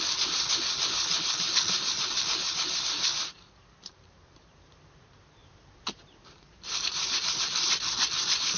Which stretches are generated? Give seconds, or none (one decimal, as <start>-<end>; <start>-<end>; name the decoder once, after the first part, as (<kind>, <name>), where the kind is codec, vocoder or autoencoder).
3.1-4.7 (vocoder, BigVGAN v2); 5.4-7.4